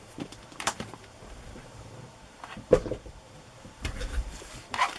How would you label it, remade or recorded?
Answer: remade